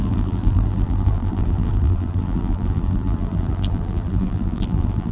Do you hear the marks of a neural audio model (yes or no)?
yes